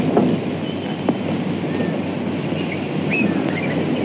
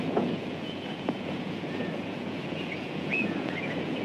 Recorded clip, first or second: first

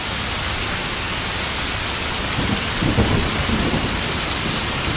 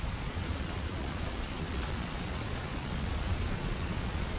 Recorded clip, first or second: first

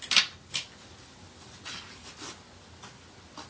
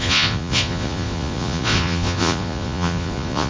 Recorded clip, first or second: first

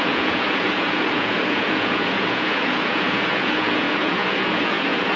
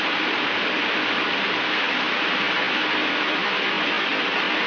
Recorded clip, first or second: second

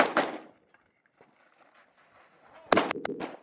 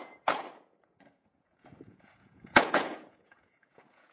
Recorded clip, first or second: first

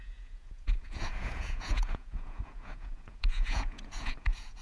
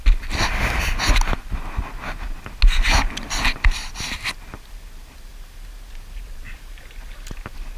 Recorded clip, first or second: second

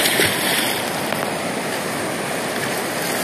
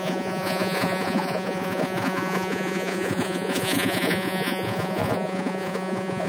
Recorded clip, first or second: first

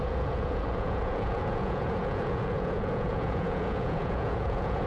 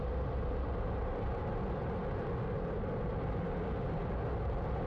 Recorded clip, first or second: second